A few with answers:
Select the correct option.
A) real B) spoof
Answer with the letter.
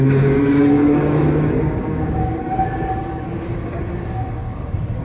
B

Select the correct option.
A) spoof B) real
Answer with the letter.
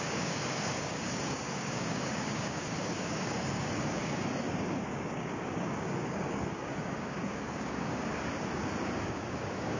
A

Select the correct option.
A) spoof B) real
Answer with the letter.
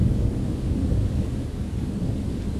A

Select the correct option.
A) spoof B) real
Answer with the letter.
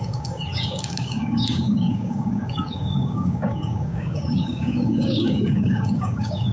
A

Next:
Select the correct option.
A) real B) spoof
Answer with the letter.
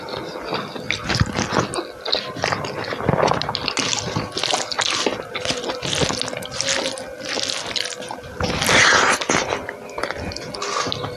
A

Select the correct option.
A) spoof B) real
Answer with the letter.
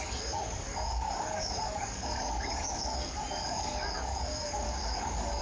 A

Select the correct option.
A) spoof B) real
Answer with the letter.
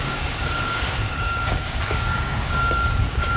A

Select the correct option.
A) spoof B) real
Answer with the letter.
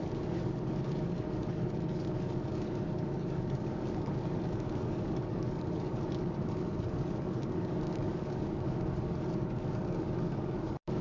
A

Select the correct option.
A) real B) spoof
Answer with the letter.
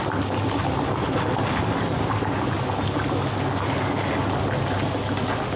A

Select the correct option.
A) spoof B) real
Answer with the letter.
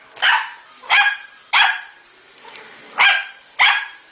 B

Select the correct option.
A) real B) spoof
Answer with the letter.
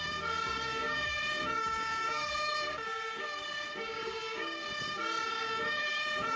B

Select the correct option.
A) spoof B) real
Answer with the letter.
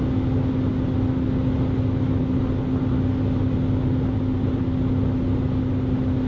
B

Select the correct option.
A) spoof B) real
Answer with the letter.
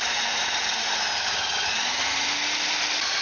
B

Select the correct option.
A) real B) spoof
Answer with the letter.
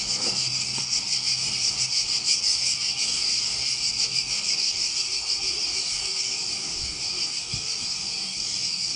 B